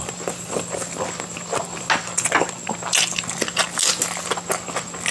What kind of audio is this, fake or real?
real